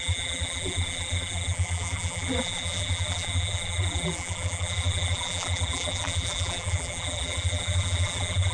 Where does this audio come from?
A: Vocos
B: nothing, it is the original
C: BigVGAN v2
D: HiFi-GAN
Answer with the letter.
C